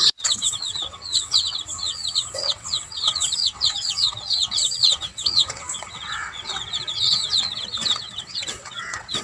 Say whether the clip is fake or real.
fake